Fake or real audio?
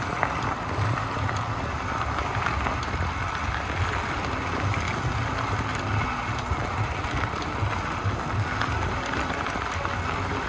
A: real